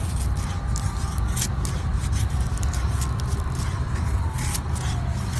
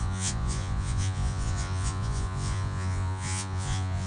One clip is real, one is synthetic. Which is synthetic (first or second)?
second